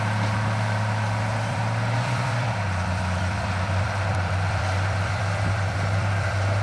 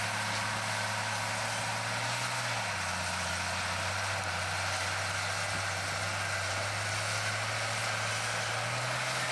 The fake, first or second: first